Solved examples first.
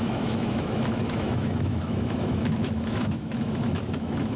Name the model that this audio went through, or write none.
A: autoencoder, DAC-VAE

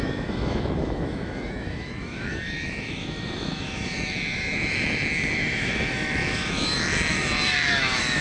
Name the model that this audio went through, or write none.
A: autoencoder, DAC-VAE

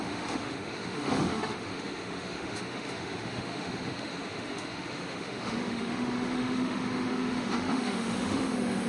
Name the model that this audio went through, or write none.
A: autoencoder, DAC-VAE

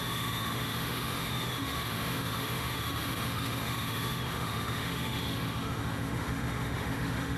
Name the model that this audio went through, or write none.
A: autoencoder, DAC-VAE